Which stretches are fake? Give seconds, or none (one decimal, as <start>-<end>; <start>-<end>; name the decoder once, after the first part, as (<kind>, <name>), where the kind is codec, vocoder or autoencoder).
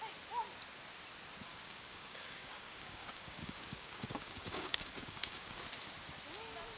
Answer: 1.5-5.6 (codec, DAC)